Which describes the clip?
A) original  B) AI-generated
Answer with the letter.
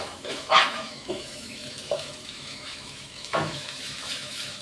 B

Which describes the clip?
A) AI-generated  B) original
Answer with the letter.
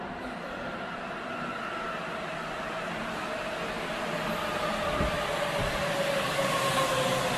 B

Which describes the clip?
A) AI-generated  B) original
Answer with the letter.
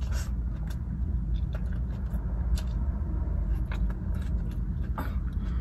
B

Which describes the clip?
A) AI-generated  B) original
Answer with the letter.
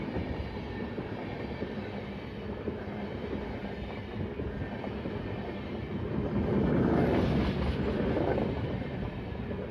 B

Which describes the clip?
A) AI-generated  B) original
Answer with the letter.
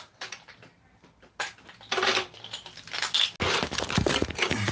B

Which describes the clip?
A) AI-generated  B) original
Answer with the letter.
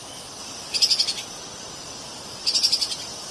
B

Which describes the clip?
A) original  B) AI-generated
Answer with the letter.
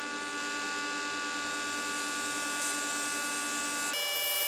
A